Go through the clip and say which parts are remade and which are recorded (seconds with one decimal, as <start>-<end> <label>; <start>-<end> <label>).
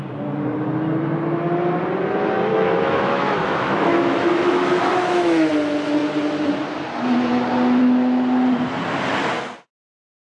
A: 0.0-2.5 recorded; 2.5-5.5 remade; 5.5-10.4 recorded